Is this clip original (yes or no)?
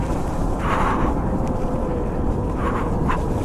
no